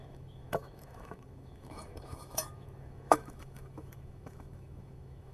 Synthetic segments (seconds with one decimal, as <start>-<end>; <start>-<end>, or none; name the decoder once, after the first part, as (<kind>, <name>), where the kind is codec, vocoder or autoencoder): 0.0-5.3 (autoencoder, DAC-VAE)